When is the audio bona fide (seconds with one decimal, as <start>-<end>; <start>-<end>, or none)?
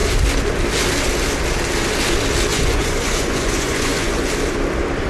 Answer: 0.0-2.5; 4.3-5.1